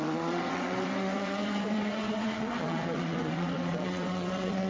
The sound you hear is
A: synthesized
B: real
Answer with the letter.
A